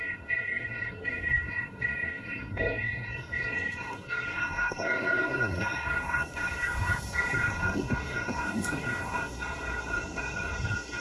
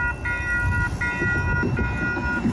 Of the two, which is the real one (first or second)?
second